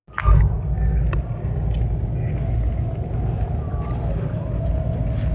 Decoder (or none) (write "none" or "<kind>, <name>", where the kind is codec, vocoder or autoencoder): none